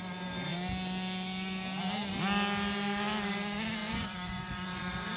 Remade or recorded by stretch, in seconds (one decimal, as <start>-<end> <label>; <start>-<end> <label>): 0.0-3.8 recorded; 3.8-5.2 remade